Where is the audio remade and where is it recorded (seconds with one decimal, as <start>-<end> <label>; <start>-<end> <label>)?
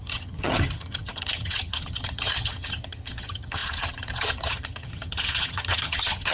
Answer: 0.0-6.3 remade